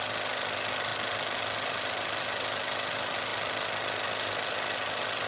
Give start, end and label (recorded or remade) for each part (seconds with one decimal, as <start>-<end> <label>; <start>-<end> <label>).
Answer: 0.0-5.3 recorded